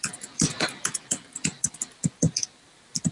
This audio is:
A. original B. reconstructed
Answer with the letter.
B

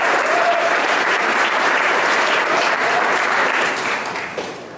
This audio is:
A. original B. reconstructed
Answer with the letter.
B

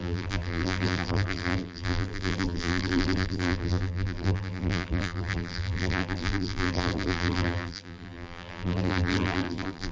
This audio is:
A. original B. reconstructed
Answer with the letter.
B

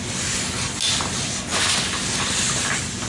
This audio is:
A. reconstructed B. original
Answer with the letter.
B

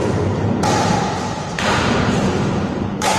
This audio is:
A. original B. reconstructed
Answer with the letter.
B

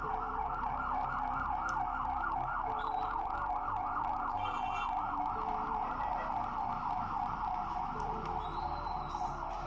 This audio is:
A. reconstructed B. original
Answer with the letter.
A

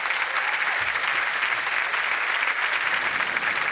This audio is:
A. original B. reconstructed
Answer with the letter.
A